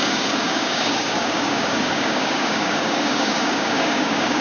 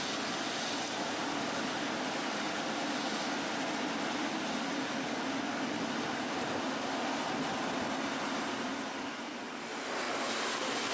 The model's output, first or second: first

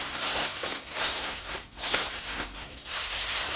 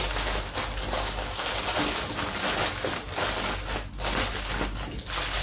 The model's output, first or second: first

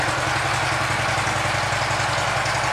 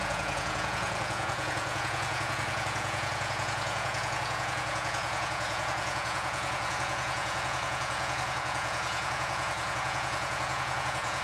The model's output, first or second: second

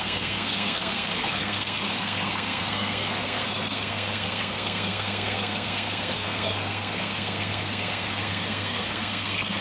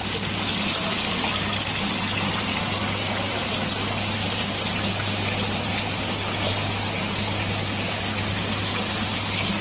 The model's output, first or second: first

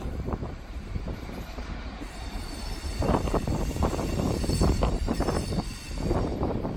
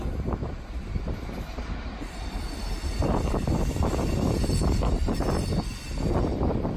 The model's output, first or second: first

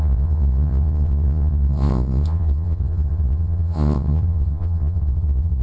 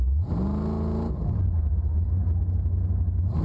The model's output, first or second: first